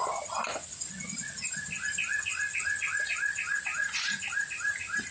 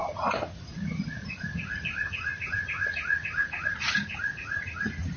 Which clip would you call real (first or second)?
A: first